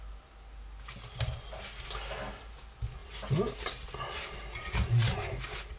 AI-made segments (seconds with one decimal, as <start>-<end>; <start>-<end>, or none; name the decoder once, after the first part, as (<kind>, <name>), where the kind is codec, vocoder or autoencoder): none